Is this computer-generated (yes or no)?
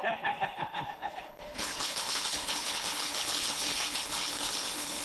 yes